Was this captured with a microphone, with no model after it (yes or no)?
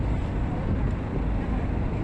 yes